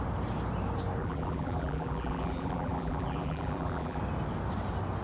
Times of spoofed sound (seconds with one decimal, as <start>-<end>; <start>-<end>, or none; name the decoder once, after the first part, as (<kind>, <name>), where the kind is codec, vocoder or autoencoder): 1.0-4.0 (vocoder, BigVGAN v2)